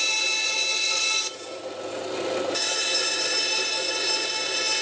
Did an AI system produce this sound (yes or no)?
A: no